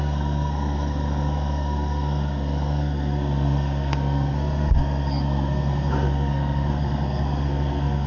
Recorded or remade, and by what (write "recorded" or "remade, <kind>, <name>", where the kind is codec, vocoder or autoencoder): remade, codec, SNAC